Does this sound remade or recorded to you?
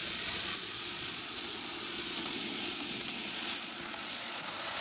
remade